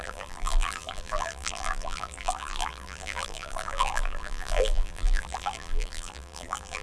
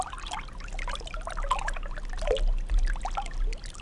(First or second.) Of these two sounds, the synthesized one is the first